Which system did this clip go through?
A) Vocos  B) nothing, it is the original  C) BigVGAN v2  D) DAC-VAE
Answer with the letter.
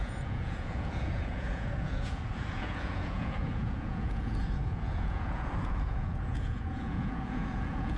A